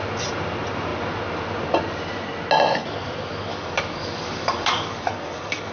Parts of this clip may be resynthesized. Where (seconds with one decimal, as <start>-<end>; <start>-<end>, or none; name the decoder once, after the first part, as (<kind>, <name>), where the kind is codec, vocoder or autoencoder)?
3.5-5.7 (codec, DAC)